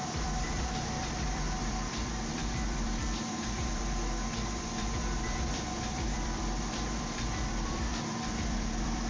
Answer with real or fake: fake